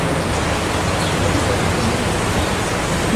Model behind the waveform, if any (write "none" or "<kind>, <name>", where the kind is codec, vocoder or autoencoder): none